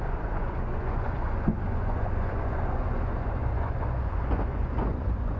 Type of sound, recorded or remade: remade